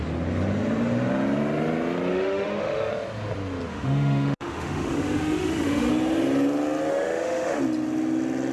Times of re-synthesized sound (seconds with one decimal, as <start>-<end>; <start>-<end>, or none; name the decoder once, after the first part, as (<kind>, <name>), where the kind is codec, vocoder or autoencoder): 2.1-2.9 (autoencoder, DAC-VAE); 3.7-5.9; 6.9-7.6